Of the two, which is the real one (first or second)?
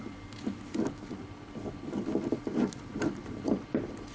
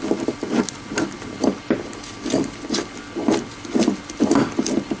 second